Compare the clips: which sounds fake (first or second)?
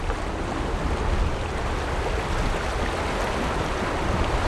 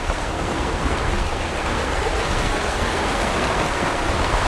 second